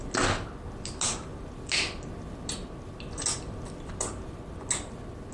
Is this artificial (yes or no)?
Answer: no